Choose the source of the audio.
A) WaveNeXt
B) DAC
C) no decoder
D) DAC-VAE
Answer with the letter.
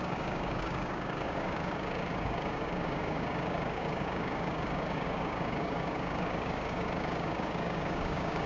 B